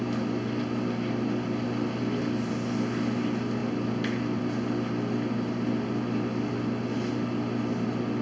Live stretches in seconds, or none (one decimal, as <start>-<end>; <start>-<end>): 0.0-8.2